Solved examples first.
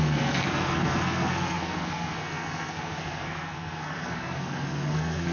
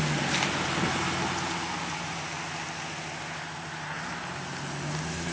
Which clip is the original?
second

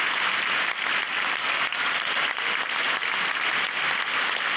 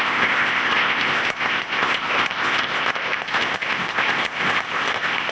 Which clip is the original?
first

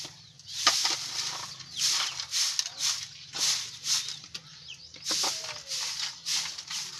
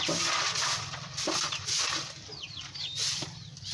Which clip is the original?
first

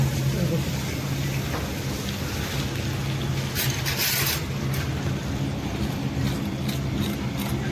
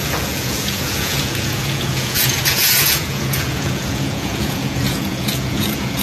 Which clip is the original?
first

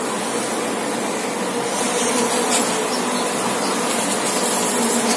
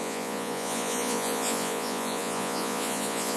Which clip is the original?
first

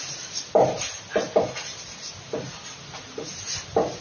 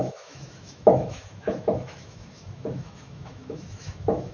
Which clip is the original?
first